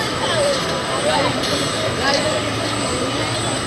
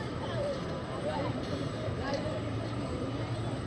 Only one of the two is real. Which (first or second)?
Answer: first